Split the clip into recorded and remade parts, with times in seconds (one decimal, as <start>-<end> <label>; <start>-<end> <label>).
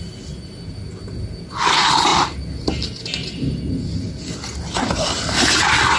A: 0.0-6.0 recorded